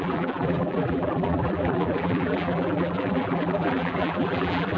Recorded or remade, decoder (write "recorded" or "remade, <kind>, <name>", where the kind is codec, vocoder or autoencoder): remade, vocoder, BigVGAN v2